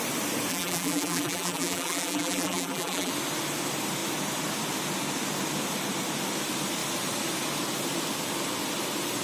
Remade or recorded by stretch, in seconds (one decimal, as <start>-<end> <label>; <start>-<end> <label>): 0.0-0.5 recorded; 0.5-3.1 remade; 3.1-9.2 recorded